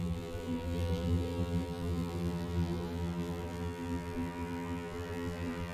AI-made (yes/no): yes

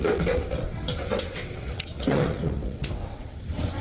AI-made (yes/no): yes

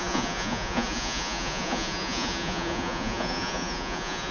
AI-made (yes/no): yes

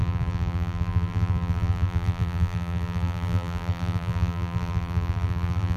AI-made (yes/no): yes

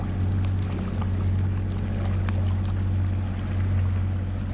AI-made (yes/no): no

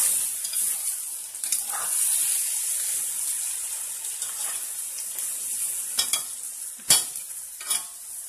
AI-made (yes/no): no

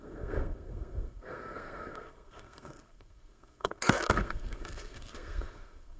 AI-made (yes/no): yes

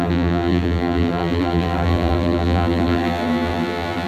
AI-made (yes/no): yes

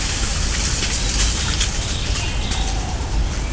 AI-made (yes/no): no